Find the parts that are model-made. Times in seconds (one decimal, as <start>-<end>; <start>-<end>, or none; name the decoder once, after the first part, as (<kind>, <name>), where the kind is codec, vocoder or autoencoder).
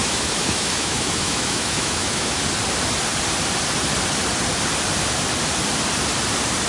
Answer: 0.0-2.4 (autoencoder, DAC-VAE)